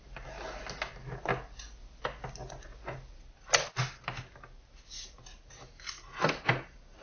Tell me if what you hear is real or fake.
real